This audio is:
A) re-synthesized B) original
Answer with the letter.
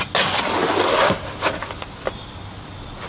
B